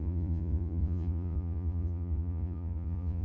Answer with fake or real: fake